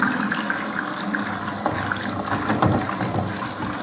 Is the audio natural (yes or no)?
yes